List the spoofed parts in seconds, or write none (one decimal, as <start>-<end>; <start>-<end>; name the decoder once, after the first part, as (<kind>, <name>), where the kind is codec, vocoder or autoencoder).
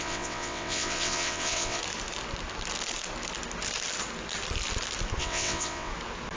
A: 0.0-1.8 (vocoder, WaveNeXt); 5.2-5.9